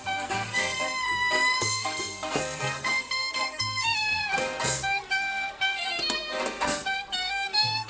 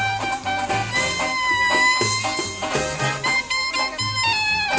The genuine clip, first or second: second